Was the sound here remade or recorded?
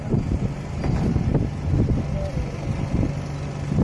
recorded